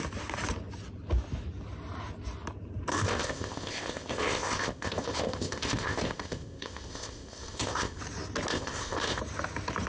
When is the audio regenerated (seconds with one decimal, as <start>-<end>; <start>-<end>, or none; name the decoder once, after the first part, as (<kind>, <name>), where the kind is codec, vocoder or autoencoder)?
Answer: 2.9-8.0 (codec, ZipCodec); 8.5-9.2